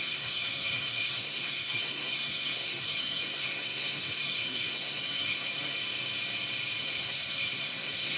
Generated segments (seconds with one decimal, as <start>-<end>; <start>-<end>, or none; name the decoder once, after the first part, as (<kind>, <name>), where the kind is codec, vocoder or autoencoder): 0.0-5.5 (codec, SNAC); 6.8-8.2